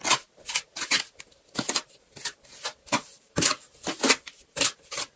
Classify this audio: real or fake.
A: real